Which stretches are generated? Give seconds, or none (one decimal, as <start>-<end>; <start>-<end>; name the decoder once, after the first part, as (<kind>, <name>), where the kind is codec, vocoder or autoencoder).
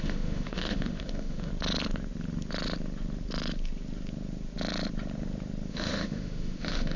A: 0.0-1.5 (autoencoder, DAC-VAE); 5.7-7.0